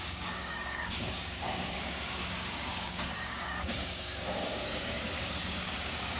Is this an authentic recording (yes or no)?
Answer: no